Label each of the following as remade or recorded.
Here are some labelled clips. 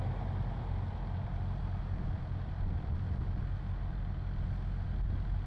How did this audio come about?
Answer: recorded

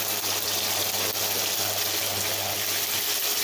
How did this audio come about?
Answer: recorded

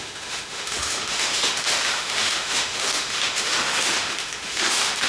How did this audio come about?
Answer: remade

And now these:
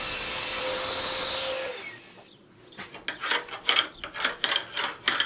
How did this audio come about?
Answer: recorded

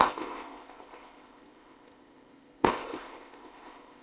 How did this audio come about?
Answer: remade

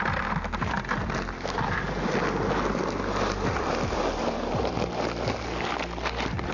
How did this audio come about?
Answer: recorded